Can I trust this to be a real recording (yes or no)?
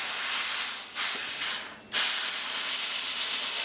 yes